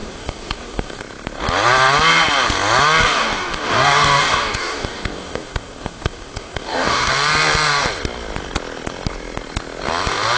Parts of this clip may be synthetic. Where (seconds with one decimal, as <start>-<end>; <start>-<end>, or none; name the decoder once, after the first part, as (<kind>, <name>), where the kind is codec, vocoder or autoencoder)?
0.0-1.0 (codec, DAC); 3.0-7.1